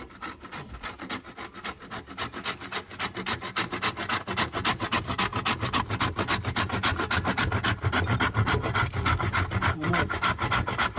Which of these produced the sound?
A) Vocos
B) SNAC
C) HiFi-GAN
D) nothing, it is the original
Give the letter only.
D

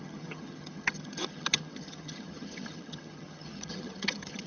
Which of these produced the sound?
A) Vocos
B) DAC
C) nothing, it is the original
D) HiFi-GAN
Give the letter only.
D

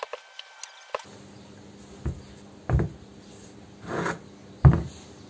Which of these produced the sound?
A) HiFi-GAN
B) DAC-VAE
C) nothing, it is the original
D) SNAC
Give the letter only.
C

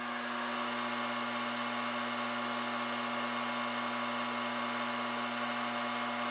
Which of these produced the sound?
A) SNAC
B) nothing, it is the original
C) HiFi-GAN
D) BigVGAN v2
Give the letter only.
B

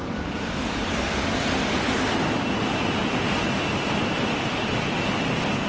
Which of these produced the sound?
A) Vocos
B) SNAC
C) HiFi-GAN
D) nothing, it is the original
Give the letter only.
D